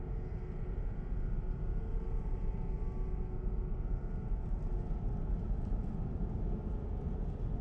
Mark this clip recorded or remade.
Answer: recorded